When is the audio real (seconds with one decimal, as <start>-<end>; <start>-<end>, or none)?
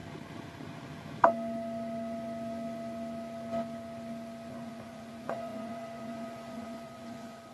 0.0-4.5